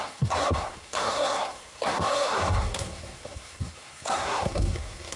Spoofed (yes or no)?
yes